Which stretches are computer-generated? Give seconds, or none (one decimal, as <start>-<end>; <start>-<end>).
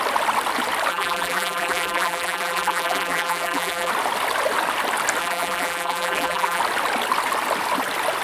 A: 0.9-3.9; 5.2-6.6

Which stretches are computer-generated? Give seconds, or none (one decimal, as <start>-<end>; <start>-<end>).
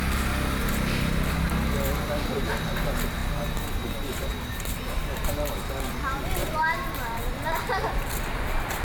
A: 5.0-5.5; 6.4-7.2